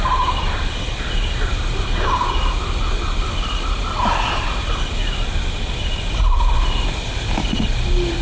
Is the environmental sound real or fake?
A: real